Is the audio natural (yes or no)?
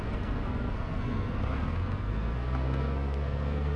no